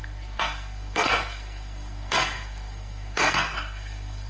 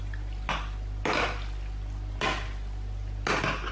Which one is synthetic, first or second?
first